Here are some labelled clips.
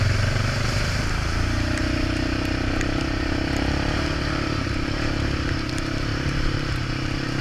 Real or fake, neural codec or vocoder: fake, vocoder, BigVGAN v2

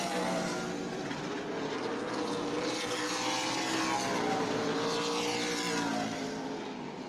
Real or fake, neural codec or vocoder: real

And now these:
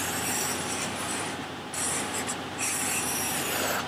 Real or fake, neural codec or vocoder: fake, vocoder, BigVGAN v2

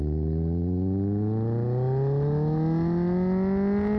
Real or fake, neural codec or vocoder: real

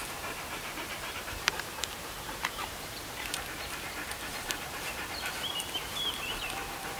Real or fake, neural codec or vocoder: fake, vocoder, BigVGAN v2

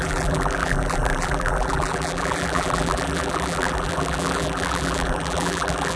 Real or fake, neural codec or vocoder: fake, vocoder, BigVGAN v2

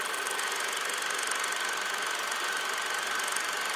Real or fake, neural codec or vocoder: real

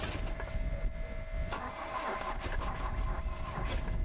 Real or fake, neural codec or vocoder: fake, vocoder, BigVGAN v2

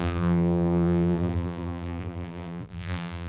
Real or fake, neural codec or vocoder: fake, vocoder, BigVGAN v2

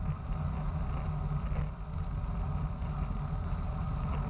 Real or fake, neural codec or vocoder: real